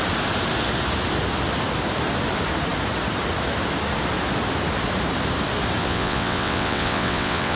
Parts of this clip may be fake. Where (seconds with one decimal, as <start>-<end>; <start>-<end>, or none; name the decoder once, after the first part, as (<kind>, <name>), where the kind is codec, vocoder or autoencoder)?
5.8-7.6 (vocoder, WaveNeXt)

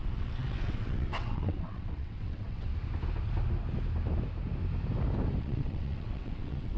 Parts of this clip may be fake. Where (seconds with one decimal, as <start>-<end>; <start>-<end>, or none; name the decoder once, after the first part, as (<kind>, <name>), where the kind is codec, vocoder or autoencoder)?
0.0-2.7 (vocoder, WaveNeXt); 5.4-6.8

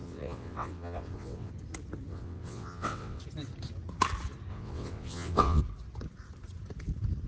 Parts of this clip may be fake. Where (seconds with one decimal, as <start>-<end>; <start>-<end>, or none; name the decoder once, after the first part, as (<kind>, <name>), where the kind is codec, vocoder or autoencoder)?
0.0-1.5 (vocoder, WaveNeXt); 2.1-3.2; 4.5-5.6

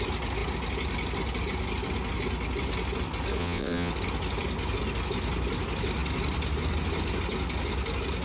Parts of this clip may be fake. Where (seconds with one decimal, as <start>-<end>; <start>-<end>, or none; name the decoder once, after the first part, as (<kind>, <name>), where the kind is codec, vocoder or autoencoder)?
3.4-3.9 (vocoder, WaveNeXt)

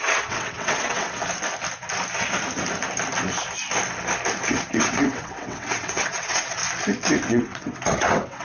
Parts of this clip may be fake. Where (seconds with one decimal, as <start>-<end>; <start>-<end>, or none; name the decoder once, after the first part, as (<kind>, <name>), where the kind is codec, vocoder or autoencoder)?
0.0-1.2 (vocoder, WaveNeXt); 4.5-6.6; 7.3-8.4

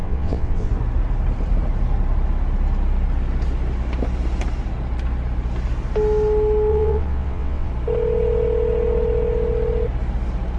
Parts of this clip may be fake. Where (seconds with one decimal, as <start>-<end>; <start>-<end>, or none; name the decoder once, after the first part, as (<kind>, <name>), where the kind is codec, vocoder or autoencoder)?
0.0-0.7 (vocoder, WaveNeXt); 6.7-7.7

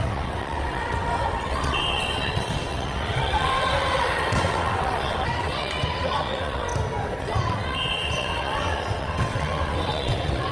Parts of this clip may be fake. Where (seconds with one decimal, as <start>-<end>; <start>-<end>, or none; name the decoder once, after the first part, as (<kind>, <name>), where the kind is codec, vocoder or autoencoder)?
0.0-6.7 (vocoder, WaveNeXt); 7.2-10.5

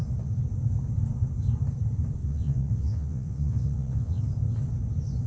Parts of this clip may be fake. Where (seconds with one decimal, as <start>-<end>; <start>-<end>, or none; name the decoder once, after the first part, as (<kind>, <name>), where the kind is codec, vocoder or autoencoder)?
2.2-4.2 (vocoder, WaveNeXt)